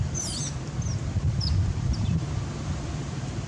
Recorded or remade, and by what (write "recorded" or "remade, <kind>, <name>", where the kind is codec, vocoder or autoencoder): recorded